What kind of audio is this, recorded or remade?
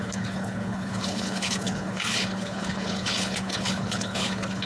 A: remade